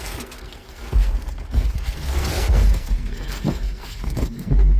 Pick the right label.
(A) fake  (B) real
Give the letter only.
A